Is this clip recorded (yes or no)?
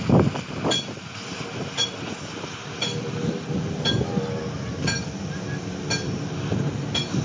yes